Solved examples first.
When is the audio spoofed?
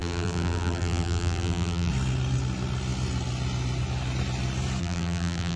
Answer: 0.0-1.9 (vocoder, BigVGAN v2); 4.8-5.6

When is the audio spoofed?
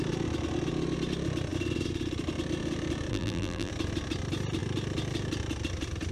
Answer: 3.1-3.7 (vocoder, BigVGAN v2)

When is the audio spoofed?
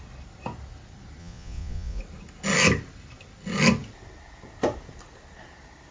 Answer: 1.2-2.0 (vocoder, Vocos)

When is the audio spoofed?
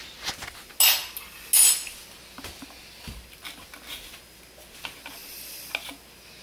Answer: none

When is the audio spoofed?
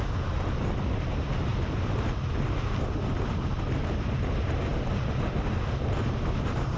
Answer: none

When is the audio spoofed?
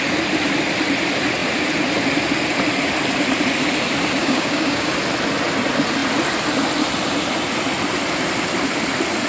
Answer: 4.2-4.9 (codec, DAC)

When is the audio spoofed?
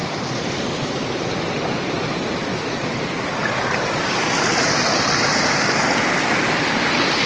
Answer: 0.0-1.5 (vocoder, BigVGAN v2); 2.5-4.5